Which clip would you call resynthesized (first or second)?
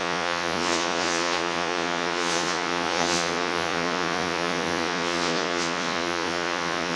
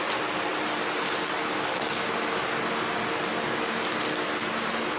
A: first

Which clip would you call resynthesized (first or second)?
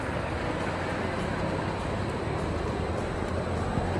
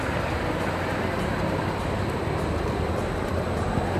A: second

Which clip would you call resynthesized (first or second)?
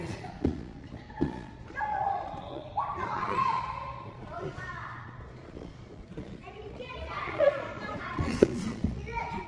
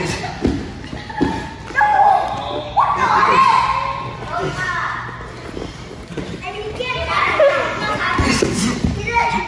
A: first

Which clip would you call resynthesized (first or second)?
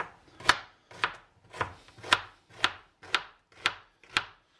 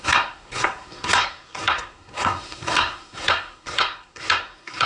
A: second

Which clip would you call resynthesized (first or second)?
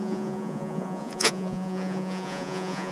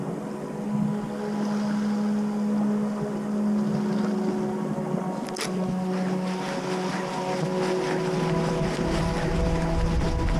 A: first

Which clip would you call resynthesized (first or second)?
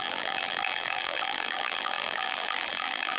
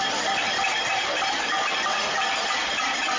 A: first